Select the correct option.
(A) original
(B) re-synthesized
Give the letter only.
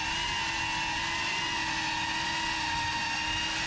A